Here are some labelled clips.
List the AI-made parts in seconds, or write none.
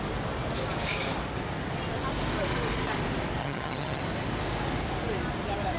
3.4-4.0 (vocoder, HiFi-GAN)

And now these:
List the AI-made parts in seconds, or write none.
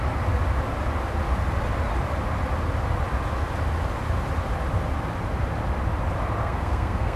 6.4-7.2 (codec, SNAC)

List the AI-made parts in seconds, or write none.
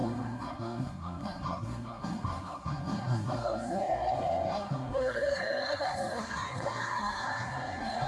0.0-8.1 (codec, SNAC)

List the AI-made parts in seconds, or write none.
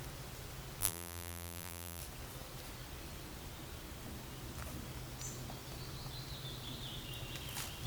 0.8-2.0 (vocoder, BigVGAN v2)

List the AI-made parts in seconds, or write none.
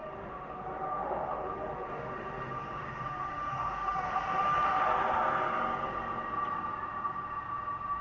0.0-4.8 (autoencoder, DAC-VAE)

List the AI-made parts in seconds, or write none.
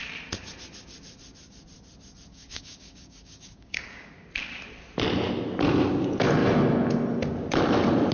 2.3-4.3 (codec, DAC)